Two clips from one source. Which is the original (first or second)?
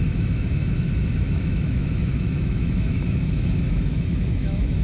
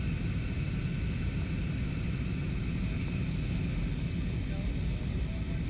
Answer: second